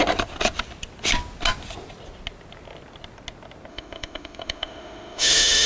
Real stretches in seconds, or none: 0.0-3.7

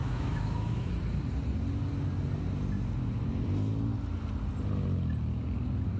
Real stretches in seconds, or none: 0.9-6.0

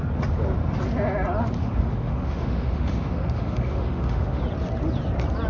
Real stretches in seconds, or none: 0.0-1.6; 4.4-5.5

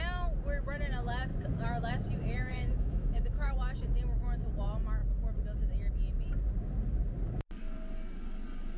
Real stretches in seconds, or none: 0.0-2.5; 3.5-8.8